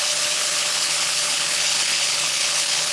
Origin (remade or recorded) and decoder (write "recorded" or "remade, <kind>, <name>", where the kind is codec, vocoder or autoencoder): remade, codec, HILCodec